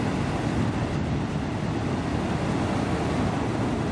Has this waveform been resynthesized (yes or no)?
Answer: no